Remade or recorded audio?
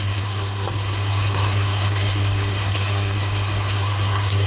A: remade